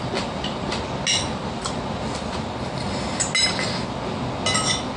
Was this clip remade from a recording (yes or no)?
no